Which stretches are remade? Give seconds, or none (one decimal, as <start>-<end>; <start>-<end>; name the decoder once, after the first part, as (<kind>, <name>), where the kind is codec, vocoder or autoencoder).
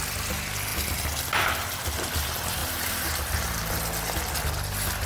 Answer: 2.6-3.7 (vocoder, BigVGAN v2)